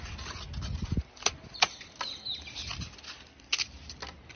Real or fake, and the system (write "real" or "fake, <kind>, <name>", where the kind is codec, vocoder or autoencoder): real